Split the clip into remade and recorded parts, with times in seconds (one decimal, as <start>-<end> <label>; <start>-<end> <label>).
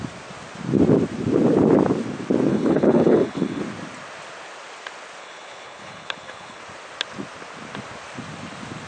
0.0-2.5 recorded; 2.5-3.6 remade; 3.6-5.2 recorded; 5.2-6.6 remade; 6.6-8.9 recorded